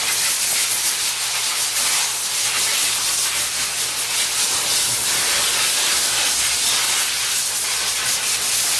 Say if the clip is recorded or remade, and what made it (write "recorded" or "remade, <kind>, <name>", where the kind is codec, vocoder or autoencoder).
recorded